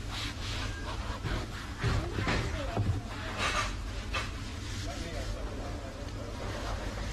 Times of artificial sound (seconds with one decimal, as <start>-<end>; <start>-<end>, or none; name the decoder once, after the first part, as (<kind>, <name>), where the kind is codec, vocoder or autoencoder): 0.0-1.0 (autoencoder, DAC-VAE)